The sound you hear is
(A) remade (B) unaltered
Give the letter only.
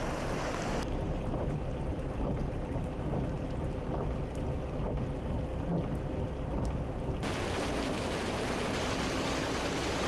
B